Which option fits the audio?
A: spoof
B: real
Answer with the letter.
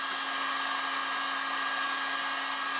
B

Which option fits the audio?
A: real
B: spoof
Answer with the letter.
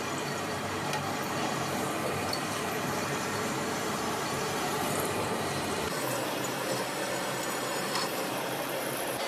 B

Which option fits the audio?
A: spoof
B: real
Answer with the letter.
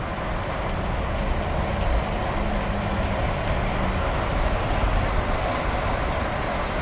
B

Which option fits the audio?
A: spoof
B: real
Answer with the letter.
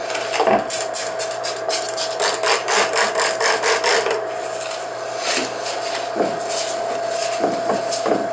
B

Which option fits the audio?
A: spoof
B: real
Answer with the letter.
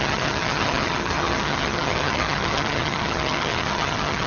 A